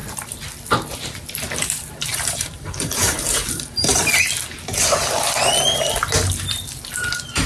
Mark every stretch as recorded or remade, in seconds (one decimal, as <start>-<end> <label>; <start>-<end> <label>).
0.0-2.1 recorded; 2.1-4.0 remade; 4.0-7.5 recorded